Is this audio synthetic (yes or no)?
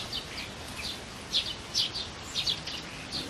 no